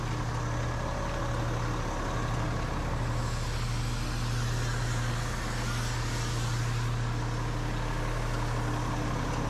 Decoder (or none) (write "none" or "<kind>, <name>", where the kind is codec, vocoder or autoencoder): none